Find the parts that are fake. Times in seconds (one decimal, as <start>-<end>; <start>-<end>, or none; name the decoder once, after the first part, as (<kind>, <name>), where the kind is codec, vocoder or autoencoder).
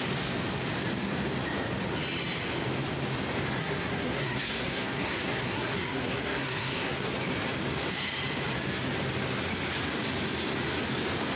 3.6-7.1 (codec, SNAC)